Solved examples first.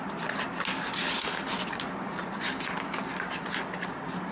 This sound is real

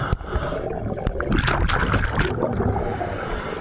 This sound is real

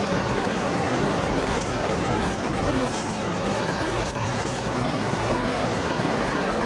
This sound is fake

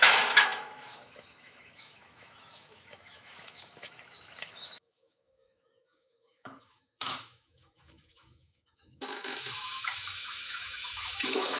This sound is fake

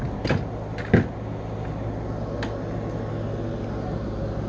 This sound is real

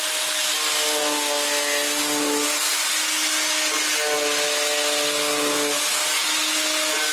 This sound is real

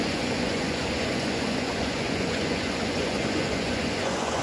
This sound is fake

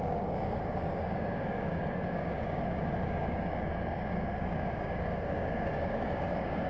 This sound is fake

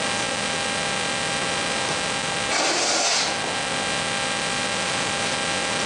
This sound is real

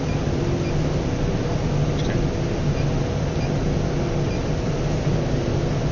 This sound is real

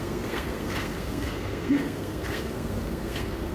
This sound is fake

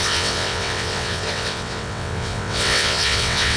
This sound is fake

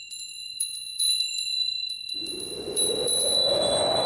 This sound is fake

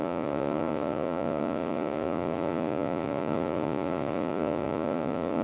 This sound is fake